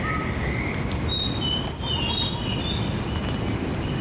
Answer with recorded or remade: recorded